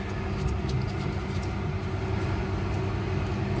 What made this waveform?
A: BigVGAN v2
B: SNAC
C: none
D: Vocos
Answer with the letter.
C